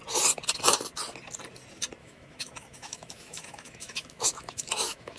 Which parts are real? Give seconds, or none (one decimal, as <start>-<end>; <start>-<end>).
0.0-2.0